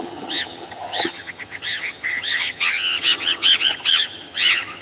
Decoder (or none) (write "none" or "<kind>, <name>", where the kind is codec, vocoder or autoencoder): vocoder, HiFi-GAN